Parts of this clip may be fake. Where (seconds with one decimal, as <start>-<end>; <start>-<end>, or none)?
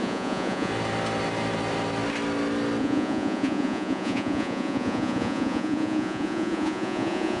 0.0-0.7; 2.8-7.4